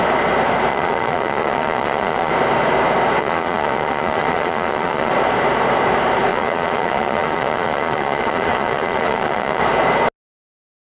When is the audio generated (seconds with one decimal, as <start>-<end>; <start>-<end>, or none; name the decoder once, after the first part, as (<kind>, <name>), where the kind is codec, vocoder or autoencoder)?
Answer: 0.7-2.3 (vocoder, Vocos); 3.2-5.1; 6.3-9.6